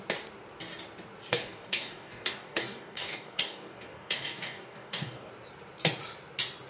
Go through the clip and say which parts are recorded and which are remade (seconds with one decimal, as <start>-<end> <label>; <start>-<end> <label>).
0.0-1.3 recorded; 1.3-5.3 remade; 5.3-6.7 recorded